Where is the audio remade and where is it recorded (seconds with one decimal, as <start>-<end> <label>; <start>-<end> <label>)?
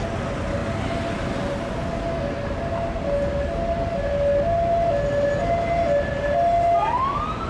0.0-7.5 recorded